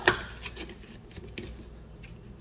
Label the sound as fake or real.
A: real